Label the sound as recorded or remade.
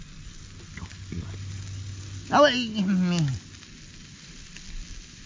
recorded